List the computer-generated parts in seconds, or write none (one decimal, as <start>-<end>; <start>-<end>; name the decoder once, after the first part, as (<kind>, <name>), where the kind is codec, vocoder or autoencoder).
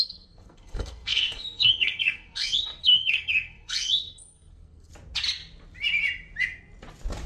0.0-4.9 (codec, SNAC)